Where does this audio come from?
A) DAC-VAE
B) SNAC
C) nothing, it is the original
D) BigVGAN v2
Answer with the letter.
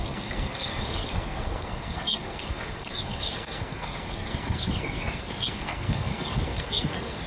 B